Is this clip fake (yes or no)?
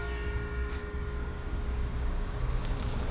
yes